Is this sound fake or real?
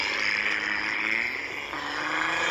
real